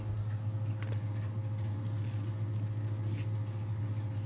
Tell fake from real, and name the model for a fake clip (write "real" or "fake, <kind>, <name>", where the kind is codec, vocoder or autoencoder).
real